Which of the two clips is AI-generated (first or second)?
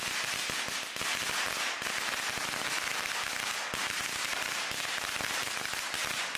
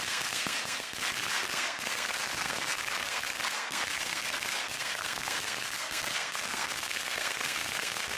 second